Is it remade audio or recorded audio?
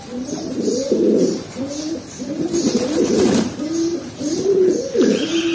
remade